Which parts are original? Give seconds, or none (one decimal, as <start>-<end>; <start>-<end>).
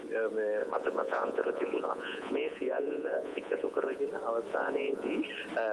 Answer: 0.0-0.6; 4.0-4.5; 5.2-5.7